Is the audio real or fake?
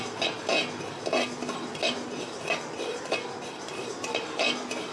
real